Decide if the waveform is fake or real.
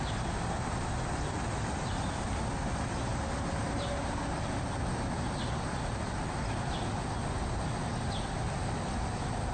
real